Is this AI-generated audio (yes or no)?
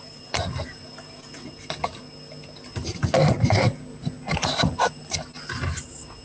no